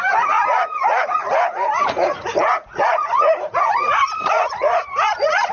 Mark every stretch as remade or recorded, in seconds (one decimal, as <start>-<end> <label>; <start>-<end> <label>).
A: 0.0-5.5 remade